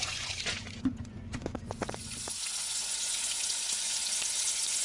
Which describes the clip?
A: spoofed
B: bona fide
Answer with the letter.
A